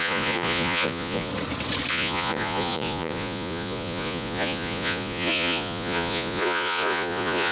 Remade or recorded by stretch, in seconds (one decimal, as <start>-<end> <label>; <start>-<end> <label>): 0.0-1.3 remade; 1.3-1.9 recorded; 1.9-7.5 remade